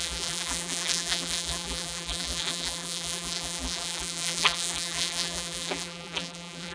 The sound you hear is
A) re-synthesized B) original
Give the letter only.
A